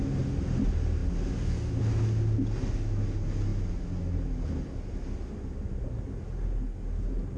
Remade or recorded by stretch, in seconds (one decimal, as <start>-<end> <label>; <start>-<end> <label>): 0.0-7.4 recorded

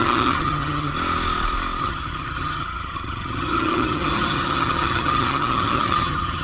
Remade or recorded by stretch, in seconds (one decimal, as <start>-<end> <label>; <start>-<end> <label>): 0.0-0.9 remade; 0.9-1.8 recorded; 1.8-6.4 remade

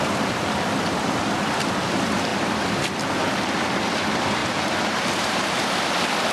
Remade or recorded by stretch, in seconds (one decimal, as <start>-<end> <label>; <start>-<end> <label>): 0.0-4.4 recorded; 4.4-5.7 remade; 5.7-6.3 recorded

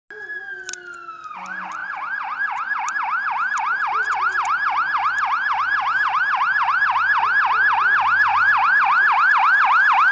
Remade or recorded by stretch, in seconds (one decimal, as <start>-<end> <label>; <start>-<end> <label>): 0.0-1.8 recorded; 1.8-2.9 remade; 2.9-3.7 recorded; 3.7-6.2 remade; 6.2-8.3 recorded; 8.3-9.3 remade; 9.3-10.1 recorded

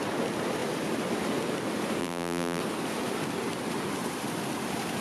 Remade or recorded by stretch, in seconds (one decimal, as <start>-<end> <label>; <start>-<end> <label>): 0.0-2.0 recorded; 2.0-2.6 remade; 2.6-5.0 recorded